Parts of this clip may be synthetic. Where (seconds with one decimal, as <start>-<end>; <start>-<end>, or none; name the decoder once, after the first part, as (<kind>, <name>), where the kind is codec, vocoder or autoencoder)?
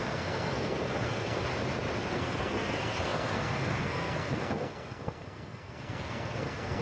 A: 0.0-1.5 (codec, SNAC); 2.1-6.8